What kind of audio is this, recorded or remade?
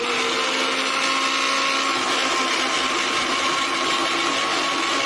recorded